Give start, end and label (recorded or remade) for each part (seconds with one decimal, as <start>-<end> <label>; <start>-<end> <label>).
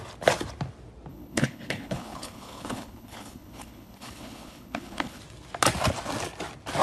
0.0-1.1 recorded; 1.1-5.2 remade; 5.2-6.8 recorded